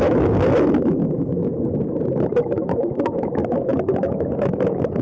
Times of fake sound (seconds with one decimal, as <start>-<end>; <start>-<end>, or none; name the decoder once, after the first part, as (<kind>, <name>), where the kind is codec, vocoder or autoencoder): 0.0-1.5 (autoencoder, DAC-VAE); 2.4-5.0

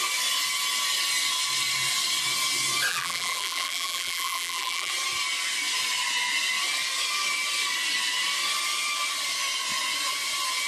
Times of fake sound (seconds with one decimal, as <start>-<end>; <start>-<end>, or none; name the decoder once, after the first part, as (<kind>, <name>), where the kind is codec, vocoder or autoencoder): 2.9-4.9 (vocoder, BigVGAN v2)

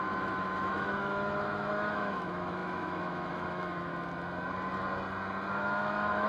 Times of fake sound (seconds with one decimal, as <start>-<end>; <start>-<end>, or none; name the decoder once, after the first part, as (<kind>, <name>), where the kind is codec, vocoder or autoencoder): 0.0-3.9 (autoencoder, DAC-VAE); 5.5-6.3

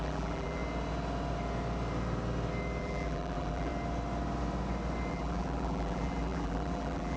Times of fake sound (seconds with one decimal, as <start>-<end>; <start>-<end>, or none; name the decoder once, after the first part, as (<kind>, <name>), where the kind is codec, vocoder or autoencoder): 0.0-0.6 (vocoder, BigVGAN v2); 2.8-3.7; 5.1-7.2